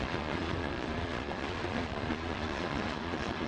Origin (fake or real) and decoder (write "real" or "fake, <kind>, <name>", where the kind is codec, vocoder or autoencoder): fake, vocoder, Vocos